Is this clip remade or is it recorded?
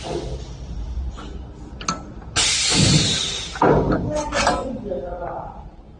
recorded